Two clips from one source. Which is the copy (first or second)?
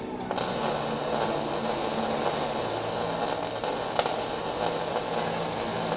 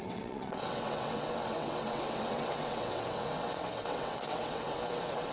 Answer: second